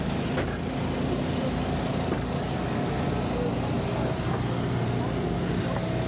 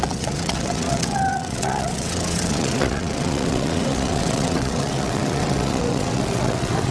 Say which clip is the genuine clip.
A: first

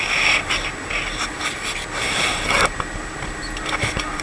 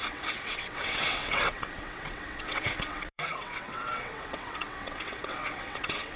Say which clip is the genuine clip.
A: first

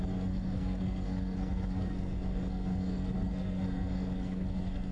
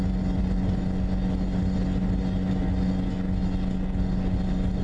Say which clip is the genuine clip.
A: second